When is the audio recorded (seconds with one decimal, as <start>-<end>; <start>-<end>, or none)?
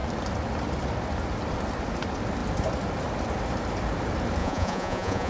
0.0-4.4